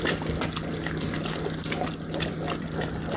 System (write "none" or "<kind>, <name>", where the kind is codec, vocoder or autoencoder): none